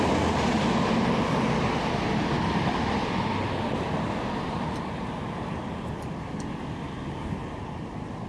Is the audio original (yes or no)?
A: yes